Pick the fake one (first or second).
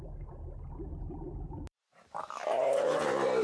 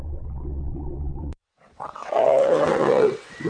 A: second